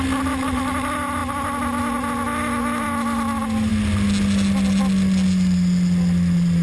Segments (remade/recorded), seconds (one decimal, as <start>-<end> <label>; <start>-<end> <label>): 0.0-6.6 recorded